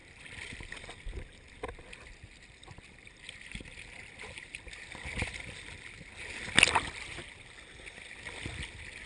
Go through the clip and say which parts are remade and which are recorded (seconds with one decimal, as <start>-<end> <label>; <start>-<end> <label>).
0.0-9.1 recorded